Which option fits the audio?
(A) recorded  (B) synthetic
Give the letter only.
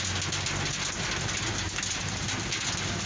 A